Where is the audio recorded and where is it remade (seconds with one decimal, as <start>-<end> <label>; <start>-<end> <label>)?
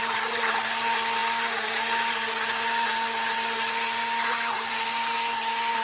0.0-5.8 recorded